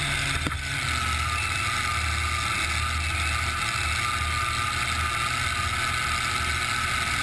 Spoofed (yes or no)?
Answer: no